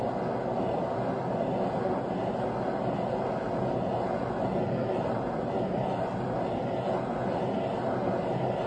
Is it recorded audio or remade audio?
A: recorded